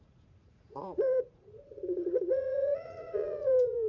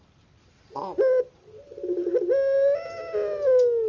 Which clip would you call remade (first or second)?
first